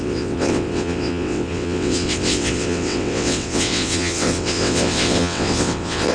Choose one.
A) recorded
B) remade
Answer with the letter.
B